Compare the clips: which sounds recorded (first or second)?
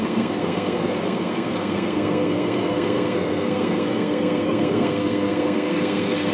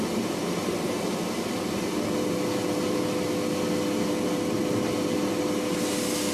second